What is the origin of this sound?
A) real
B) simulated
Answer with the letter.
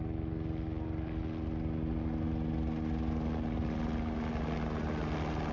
A